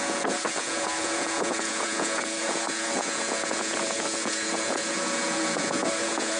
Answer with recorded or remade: remade